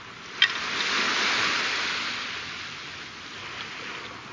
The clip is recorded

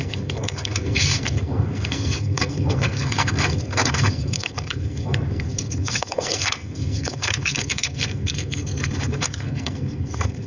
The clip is remade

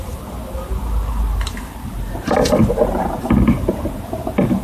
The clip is recorded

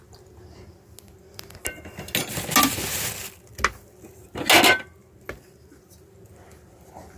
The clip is recorded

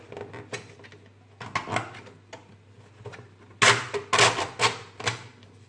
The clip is recorded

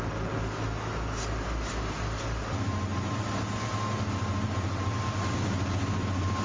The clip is recorded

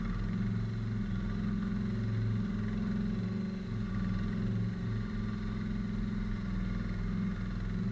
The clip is recorded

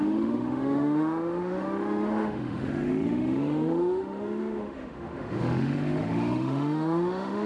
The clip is remade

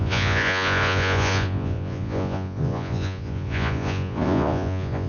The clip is remade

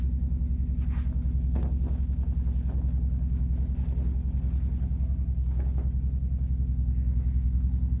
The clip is recorded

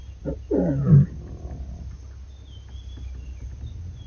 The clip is recorded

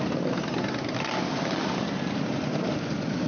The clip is recorded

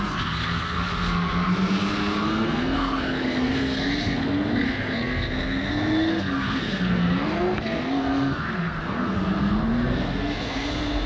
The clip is remade